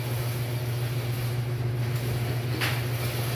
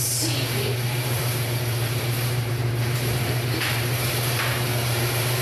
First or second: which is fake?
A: second